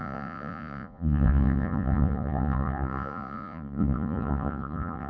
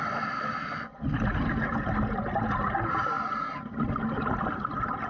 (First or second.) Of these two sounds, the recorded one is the second